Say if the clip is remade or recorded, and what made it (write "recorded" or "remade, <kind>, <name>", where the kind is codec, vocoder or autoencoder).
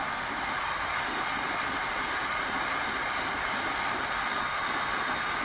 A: recorded